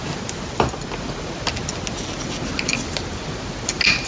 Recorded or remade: recorded